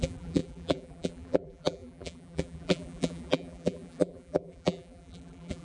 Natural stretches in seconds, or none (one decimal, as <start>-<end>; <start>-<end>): none

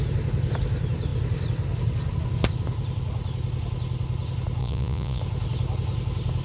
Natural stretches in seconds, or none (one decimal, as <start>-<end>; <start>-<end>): 0.0-4.6; 5.2-6.4

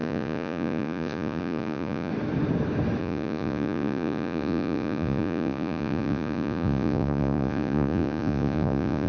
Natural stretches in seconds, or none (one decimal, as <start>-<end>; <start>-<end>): 2.1-3.0

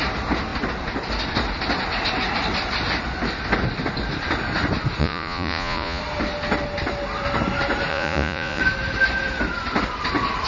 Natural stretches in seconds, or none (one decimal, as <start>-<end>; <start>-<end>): 0.0-5.0; 6.0-7.9; 8.6-10.5

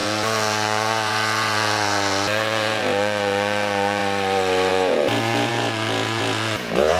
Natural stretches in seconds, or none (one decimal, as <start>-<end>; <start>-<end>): 4.0-4.7